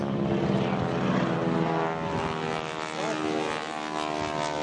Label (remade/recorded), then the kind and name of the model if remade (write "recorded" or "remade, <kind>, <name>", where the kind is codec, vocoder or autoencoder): recorded